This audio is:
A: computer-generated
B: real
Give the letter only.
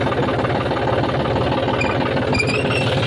B